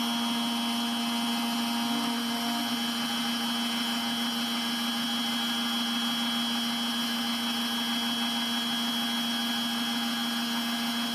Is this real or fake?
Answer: real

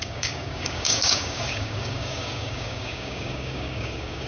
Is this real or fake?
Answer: fake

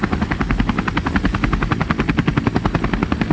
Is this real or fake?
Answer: real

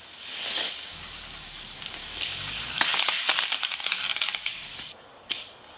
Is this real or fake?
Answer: fake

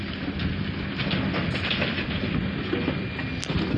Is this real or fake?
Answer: real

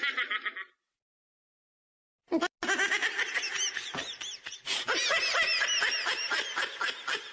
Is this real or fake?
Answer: real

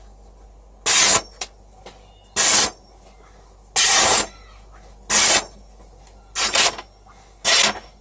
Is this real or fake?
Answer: real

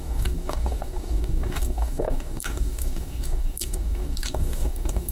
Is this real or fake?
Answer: fake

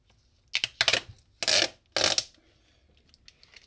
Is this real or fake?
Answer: real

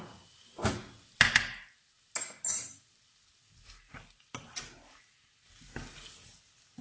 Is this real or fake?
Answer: real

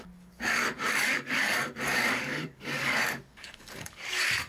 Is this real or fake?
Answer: fake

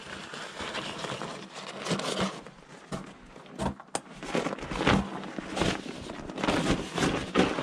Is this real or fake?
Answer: real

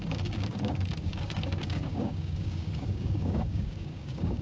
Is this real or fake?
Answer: fake